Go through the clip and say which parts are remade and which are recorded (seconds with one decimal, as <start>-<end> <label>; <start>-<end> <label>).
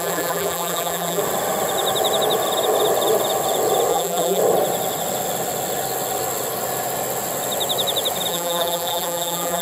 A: 0.0-1.2 remade; 1.2-3.9 recorded; 3.9-4.4 remade; 4.4-8.3 recorded; 8.3-9.6 remade